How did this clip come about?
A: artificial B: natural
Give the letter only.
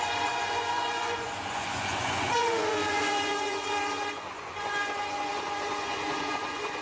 A